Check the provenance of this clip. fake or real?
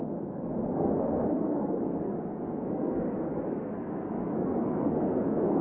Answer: fake